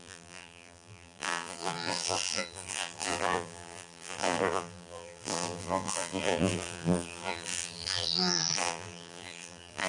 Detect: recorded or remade remade